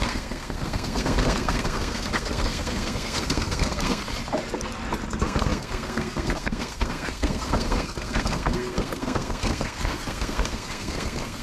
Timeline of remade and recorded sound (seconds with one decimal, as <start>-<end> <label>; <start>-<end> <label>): 0.0-4.0 remade; 4.0-5.1 recorded; 5.1-11.4 remade